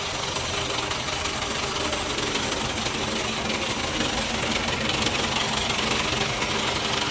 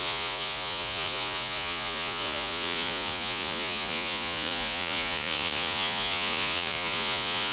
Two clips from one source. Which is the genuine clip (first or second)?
first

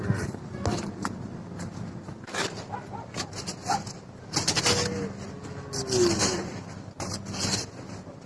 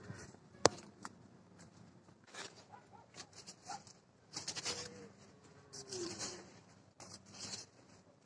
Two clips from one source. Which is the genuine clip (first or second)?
first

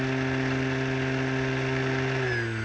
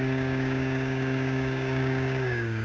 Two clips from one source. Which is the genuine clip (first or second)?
first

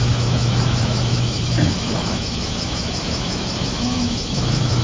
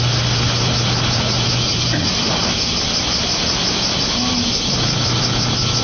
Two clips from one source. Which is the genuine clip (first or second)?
second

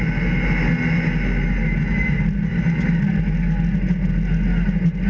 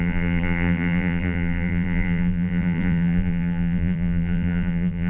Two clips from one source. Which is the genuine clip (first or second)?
first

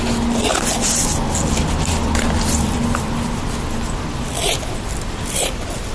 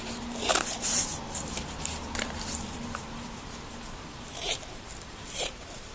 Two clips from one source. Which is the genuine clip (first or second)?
first